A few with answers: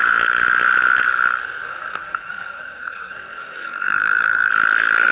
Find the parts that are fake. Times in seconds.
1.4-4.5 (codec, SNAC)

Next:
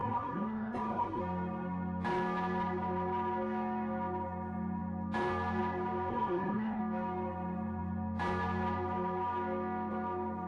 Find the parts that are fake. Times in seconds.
0.0-1.2 (codec, SNAC); 6.1-6.8

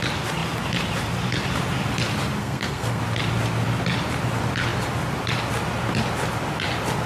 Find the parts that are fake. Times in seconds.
2.4-3.0 (codec, SNAC)

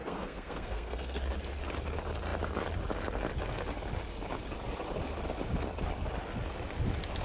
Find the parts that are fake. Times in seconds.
0.0-1.2 (codec, SNAC)

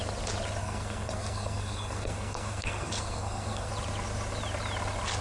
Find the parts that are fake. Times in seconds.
0.6-3.7 (codec, SNAC)

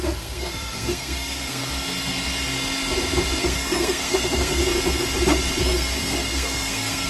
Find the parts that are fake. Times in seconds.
0.0-1.6 (codec, SNAC); 3.4-4.6; 5.6-7.1

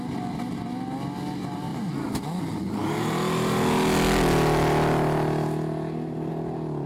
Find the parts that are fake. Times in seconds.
none

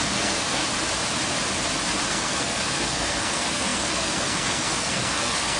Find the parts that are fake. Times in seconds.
0.0-0.6 (codec, SNAC); 2.1-5.6